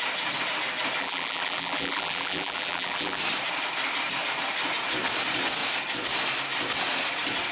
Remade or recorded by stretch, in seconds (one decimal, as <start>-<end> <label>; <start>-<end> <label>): 0.0-1.0 recorded; 1.0-3.2 remade; 3.2-7.5 recorded